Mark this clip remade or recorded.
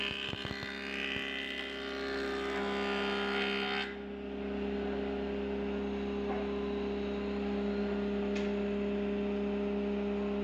recorded